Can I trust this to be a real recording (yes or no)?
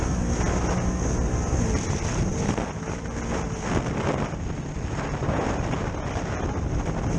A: yes